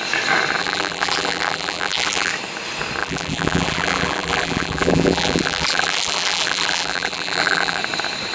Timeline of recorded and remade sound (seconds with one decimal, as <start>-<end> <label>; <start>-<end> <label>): 0.0-0.6 recorded; 0.6-2.3 remade; 2.3-3.0 recorded; 3.0-7.8 remade; 7.8-8.3 recorded